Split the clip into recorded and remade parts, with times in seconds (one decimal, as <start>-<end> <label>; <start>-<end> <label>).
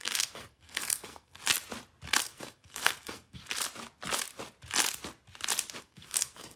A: 0.0-1.4 remade; 1.4-2.2 recorded; 2.2-3.4 remade; 3.4-5.8 recorded; 5.8-6.6 remade